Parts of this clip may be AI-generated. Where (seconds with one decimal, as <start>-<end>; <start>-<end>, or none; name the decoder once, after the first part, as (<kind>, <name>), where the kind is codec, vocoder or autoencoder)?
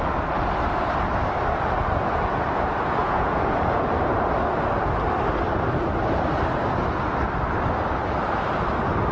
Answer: 3.0-3.8 (vocoder, Vocos)